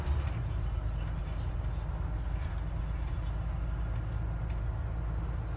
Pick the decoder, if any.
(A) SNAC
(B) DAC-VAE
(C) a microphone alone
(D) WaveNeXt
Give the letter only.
C